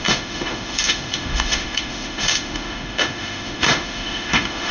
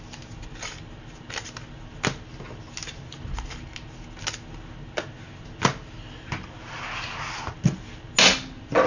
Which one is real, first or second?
second